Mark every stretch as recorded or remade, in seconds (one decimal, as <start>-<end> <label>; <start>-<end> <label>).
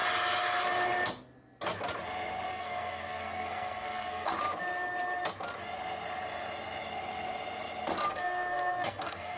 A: 0.0-2.5 recorded; 2.5-4.3 remade; 4.3-8.1 recorded; 8.1-9.4 remade